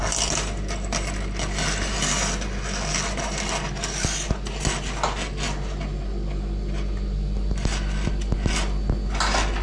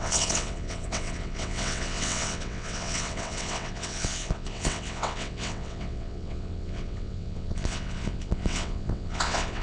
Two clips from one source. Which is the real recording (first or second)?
first